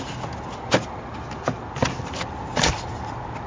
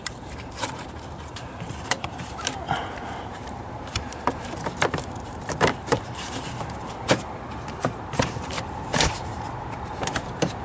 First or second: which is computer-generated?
second